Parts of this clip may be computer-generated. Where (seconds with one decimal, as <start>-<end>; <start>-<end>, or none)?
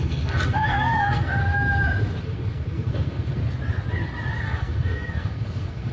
0.0-1.4; 2.2-3.4; 4.4-5.9